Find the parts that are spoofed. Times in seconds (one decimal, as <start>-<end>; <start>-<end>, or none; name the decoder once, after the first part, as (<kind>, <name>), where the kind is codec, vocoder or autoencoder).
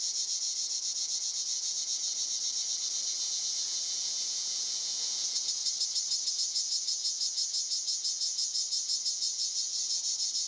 0.0-2.1 (vocoder, Vocos); 3.3-5.6; 6.3-8.6; 9.1-10.5